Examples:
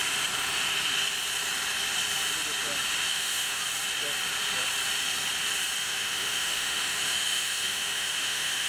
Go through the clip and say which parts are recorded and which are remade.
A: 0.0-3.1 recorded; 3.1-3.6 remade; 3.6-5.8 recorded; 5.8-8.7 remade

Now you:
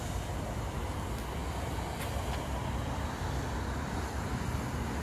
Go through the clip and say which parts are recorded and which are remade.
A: 0.0-5.0 recorded

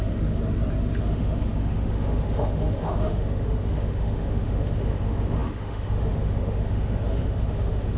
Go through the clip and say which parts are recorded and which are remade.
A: 0.0-0.4 remade; 0.4-1.0 recorded; 1.0-8.0 remade

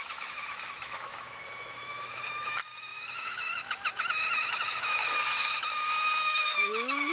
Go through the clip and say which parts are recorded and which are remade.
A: 0.0-7.1 remade

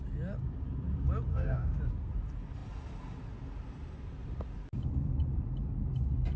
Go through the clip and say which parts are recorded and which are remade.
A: 0.0-1.3 recorded; 1.3-1.8 remade; 1.8-6.4 recorded

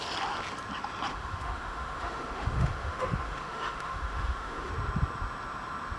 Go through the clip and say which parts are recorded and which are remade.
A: 0.0-1.1 recorded; 1.1-4.7 remade; 4.7-6.0 recorded